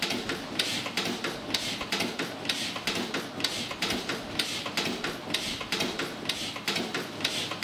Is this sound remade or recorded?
recorded